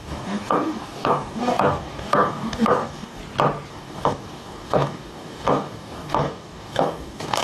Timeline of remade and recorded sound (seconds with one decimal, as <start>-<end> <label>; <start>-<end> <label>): 0.0-3.2 remade; 3.2-3.7 recorded; 3.7-7.4 remade